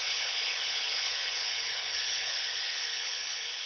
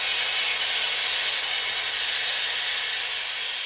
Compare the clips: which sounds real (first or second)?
second